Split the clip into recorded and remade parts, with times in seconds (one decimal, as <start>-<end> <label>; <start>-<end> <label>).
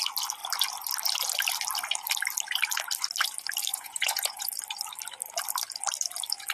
0.0-3.7 recorded; 3.7-4.5 remade; 4.5-6.5 recorded